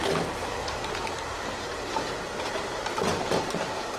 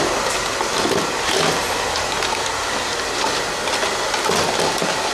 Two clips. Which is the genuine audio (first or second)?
second